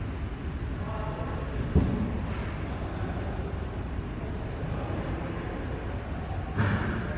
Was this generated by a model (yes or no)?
no